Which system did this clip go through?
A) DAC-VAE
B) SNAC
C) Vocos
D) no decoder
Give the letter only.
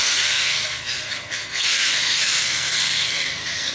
B